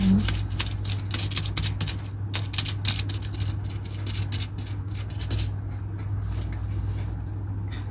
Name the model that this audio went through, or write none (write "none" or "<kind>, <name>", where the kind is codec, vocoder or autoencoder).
none